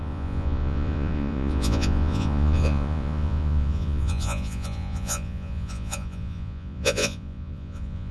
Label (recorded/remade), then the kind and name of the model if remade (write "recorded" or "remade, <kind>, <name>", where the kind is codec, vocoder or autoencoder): remade, vocoder, Vocos